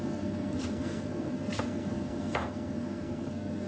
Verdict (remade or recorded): remade